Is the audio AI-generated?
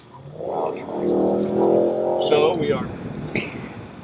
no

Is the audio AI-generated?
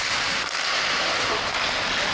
no